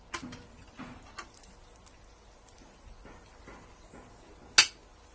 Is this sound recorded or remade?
recorded